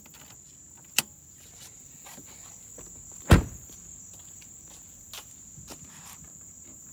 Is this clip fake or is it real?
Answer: real